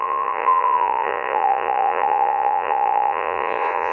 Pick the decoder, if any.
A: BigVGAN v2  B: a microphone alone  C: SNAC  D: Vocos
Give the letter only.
D